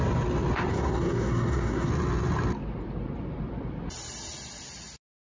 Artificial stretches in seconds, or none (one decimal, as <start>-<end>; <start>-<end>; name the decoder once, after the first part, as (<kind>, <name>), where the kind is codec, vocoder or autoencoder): 0.7-1.9 (codec, SNAC)